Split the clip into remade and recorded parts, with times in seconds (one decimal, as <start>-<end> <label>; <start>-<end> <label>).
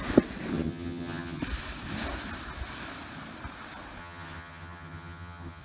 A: 0.0-0.5 recorded; 0.5-1.4 remade; 1.4-4.0 recorded; 4.0-5.6 remade